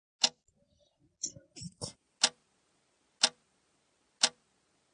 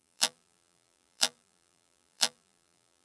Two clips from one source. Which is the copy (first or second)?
second